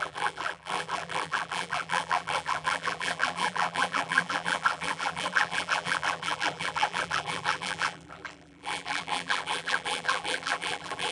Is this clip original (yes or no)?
no